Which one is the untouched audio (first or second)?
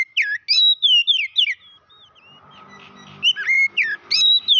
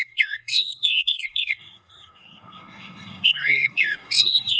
first